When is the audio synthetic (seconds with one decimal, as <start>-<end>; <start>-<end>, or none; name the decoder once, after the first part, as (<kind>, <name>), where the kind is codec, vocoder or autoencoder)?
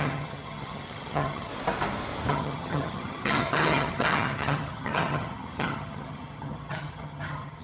0.0-1.5 (vocoder, HiFi-GAN); 2.3-7.6